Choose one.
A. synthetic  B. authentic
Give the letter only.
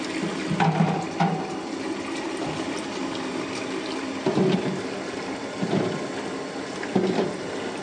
B